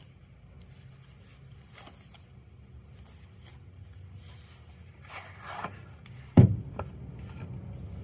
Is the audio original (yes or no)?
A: yes